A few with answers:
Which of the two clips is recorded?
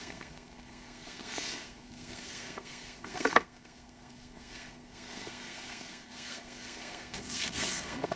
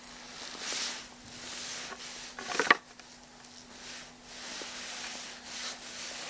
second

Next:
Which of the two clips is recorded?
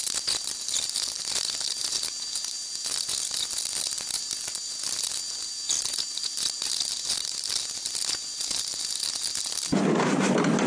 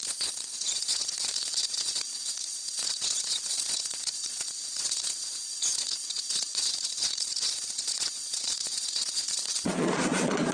first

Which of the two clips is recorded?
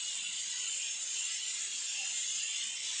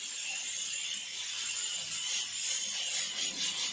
second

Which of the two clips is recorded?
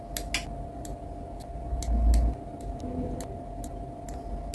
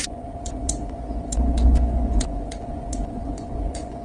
first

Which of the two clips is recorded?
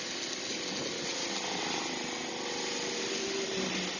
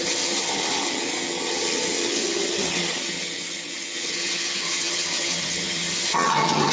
first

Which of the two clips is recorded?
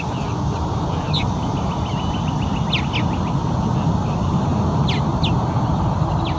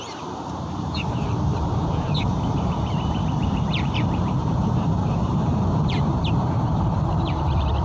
first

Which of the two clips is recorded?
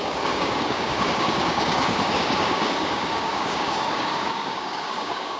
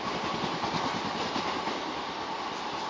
second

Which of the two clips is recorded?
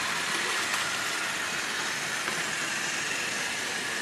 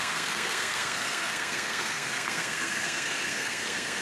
first